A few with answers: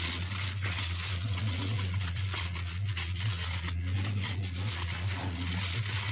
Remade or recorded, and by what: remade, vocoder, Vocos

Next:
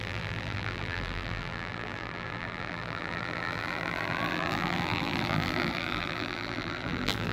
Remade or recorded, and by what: remade, vocoder, BigVGAN v2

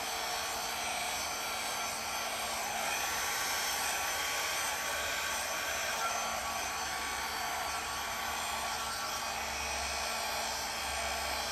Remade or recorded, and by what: recorded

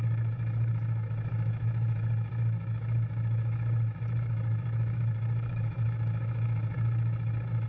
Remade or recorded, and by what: remade, autoencoder, DAC-VAE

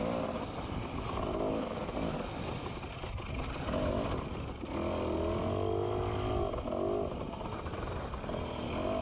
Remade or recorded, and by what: recorded